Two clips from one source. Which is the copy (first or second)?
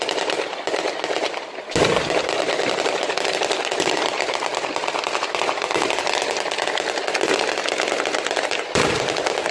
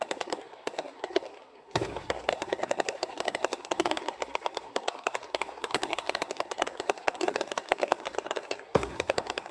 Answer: second